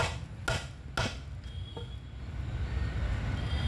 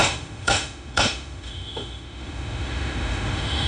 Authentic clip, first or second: first